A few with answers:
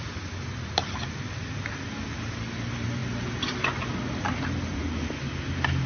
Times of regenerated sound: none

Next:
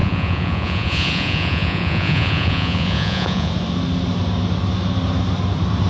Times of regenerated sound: 0.0-3.5 (vocoder, Vocos)